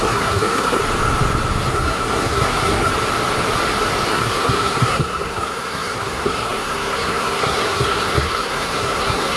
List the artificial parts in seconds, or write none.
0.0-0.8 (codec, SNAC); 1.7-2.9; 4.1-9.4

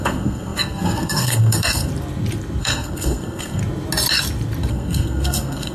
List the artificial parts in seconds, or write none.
0.0-1.9 (codec, SNAC); 2.6-3.6; 4.7-5.7

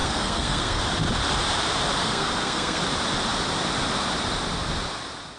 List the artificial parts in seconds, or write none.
0.0-0.8 (codec, SNAC); 2.0-2.8

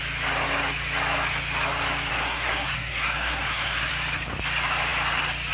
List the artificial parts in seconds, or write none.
2.1-3.9 (codec, SNAC)

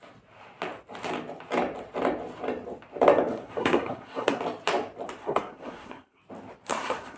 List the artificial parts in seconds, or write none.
3.3-4.4 (codec, SNAC); 5.2-6.2; 6.7-7.2

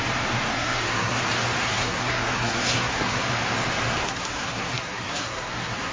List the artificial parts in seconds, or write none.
0.5-1.2 (codec, SNAC); 1.6-3.2; 4.0-5.9

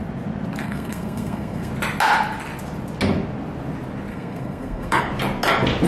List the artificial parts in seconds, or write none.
0.6-1.7 (codec, SNAC); 4.1-5.0

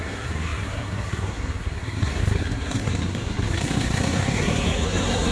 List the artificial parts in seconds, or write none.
0.0-5.3 (codec, SNAC)